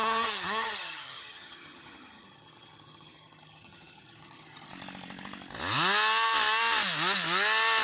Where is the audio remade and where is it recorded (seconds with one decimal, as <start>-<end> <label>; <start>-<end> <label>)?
0.0-4.7 remade; 4.7-7.8 recorded